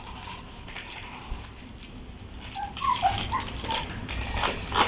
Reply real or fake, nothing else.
real